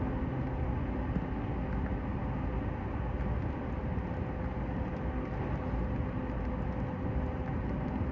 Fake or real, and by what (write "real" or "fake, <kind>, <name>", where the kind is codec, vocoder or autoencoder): real